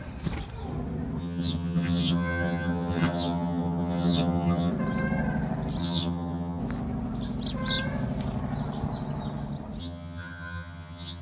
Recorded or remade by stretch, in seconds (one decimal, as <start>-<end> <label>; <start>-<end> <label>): 0.0-1.2 recorded; 1.2-4.7 remade; 4.7-5.8 recorded; 5.8-6.6 remade; 6.6-9.8 recorded; 9.8-11.2 remade